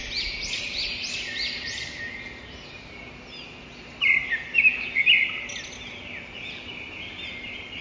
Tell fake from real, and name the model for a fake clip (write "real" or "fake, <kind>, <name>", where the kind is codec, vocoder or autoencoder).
real